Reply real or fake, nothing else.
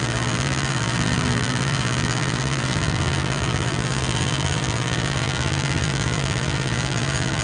fake